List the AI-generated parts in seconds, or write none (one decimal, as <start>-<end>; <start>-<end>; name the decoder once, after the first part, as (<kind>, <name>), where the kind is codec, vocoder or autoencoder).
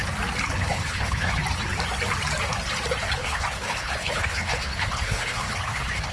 0.6-1.4 (codec, HILCodec); 3.2-6.1